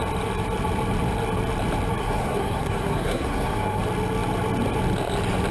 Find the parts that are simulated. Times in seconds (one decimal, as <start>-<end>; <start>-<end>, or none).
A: 2.0-3.8